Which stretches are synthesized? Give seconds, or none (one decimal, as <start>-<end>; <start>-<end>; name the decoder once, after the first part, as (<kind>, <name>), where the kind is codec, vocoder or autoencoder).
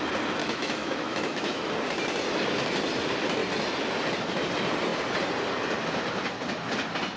0.4-1.7 (autoencoder, DAC-VAE)